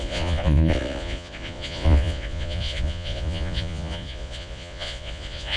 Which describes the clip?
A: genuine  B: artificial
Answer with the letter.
B